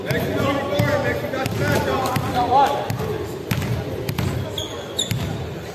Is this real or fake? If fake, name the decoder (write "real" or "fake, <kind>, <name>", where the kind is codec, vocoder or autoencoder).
real